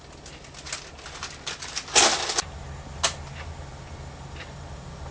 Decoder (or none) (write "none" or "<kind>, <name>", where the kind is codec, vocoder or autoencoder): none